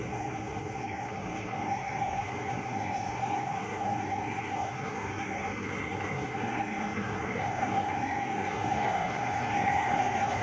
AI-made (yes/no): yes